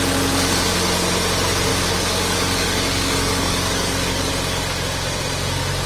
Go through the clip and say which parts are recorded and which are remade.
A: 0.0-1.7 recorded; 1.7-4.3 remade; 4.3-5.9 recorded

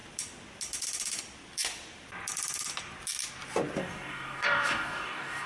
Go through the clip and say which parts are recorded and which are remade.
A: 0.0-3.8 recorded; 3.8-5.5 remade

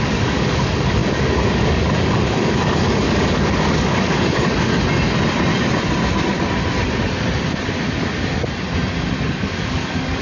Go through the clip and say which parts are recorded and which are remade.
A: 0.0-4.7 remade; 4.7-9.2 recorded; 9.2-10.2 remade